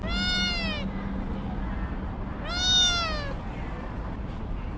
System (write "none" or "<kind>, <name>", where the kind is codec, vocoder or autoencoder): none